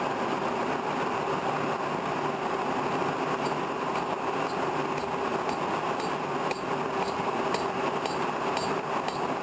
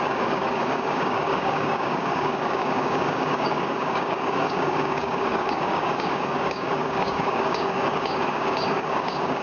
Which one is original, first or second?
first